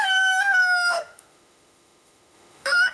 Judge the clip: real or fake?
fake